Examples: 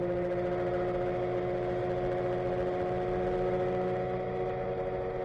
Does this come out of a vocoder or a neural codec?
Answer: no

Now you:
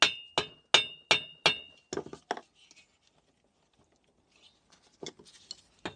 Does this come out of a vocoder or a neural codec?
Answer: no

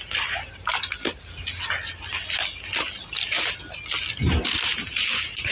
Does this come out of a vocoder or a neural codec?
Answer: no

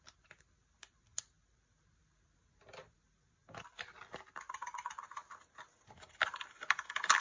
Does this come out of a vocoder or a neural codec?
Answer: no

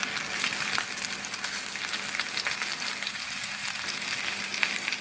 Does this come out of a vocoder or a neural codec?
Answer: no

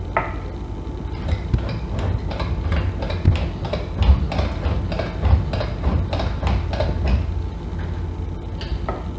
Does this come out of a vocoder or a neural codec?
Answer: no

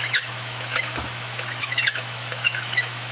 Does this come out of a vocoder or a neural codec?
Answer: yes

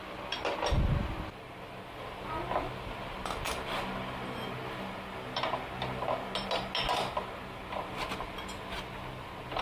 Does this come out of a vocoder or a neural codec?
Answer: no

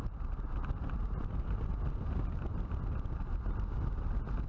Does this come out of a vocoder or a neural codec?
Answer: no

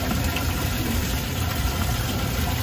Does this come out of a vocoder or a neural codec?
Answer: yes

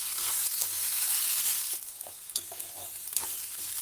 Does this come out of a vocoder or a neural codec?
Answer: yes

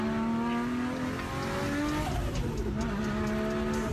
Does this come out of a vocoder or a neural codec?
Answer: no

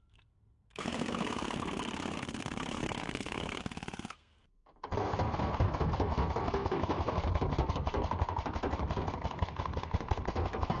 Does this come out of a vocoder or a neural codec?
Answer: yes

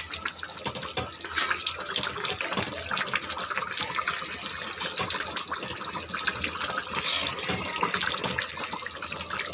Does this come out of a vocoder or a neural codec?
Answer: no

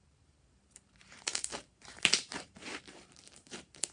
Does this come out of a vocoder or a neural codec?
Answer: yes